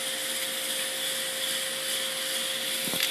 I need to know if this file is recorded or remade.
recorded